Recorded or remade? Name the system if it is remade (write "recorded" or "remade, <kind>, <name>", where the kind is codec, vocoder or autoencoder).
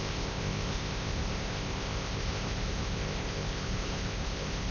remade, codec, ZipCodec